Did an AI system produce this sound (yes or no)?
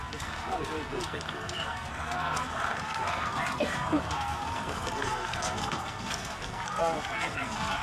yes